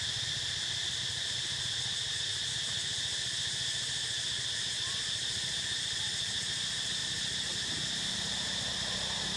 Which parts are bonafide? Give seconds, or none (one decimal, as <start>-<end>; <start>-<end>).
0.0-9.4